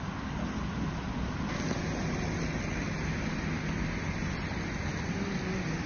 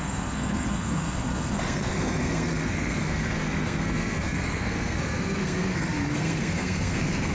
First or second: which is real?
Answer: first